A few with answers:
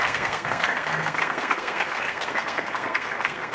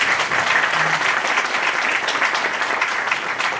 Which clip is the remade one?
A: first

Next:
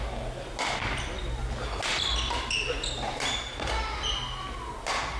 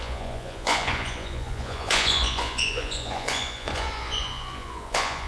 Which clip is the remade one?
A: second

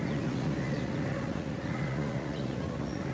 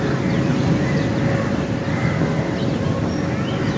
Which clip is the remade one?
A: first